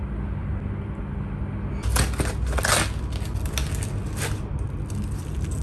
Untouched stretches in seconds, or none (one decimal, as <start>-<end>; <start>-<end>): 0.0-5.6